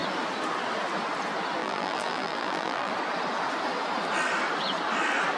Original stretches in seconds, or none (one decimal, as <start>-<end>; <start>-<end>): 0.0-1.6; 2.9-5.4